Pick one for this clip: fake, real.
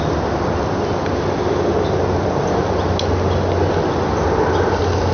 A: real